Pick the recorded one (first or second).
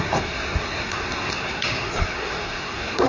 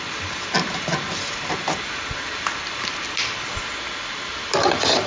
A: second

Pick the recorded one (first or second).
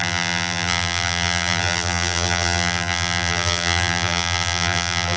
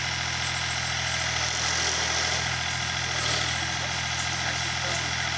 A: second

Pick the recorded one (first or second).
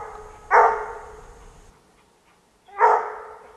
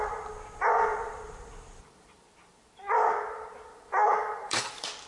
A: first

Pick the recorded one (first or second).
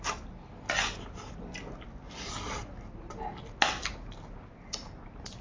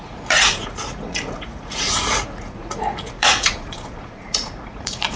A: first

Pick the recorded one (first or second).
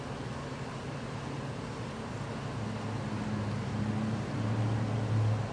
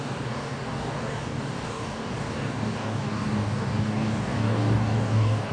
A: first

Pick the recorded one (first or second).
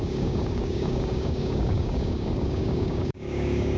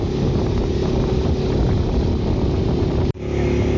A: second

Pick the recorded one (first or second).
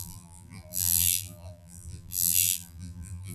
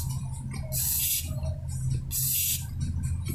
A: second